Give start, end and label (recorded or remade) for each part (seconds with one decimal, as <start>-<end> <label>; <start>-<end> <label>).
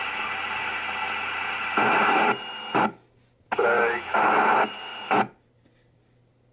0.0-6.5 recorded